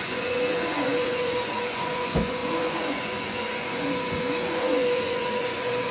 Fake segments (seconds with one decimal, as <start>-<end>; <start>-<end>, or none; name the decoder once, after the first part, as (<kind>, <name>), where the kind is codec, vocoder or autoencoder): 0.0-5.9 (vocoder, Vocos)